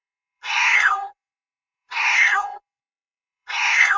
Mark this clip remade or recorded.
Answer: remade